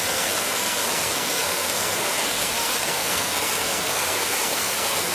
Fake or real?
fake